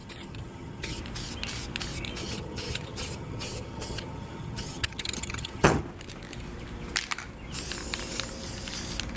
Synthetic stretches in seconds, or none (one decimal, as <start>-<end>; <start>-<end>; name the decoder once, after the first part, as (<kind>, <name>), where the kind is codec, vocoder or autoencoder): 0.0-1.0 (vocoder, HiFi-GAN); 2.2-5.8